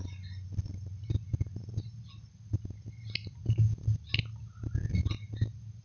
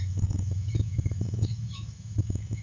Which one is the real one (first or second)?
first